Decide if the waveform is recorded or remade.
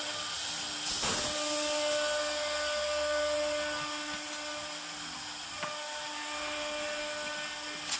recorded